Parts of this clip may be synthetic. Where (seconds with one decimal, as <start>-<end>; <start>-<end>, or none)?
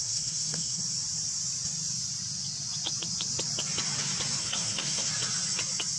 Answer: 0.0-0.8; 4.4-5.1